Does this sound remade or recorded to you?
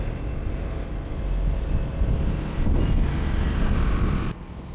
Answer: recorded